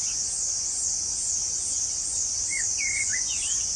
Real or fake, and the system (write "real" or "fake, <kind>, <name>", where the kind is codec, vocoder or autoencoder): fake, vocoder, Vocos